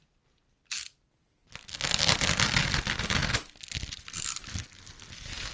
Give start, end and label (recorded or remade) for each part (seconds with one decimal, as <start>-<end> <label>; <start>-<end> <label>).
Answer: 0.0-5.5 recorded

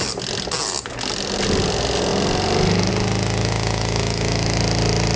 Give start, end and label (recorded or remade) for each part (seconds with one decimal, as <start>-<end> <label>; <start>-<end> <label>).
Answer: 0.0-3.4 recorded; 3.4-4.6 remade; 4.6-5.2 recorded

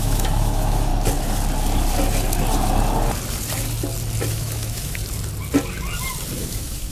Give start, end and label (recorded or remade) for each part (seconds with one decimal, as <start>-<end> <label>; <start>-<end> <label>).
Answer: 0.0-0.9 remade; 0.9-4.3 recorded; 4.3-5.0 remade; 5.0-6.4 recorded; 6.4-6.9 remade